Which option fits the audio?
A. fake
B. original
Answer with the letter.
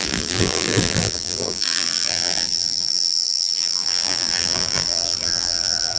A